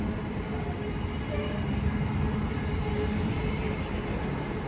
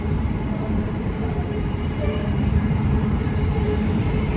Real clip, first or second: first